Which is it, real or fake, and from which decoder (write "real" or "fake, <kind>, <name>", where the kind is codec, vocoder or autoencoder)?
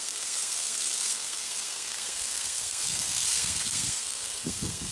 fake, codec, SNAC